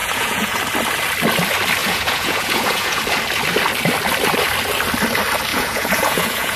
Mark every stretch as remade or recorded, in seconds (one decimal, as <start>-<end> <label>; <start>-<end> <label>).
0.0-0.6 remade; 0.6-1.8 recorded; 1.8-3.0 remade; 3.0-5.5 recorded; 5.5-6.6 remade